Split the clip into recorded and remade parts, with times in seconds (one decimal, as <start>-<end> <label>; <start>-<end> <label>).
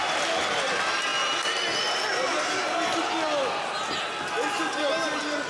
0.0-5.5 recorded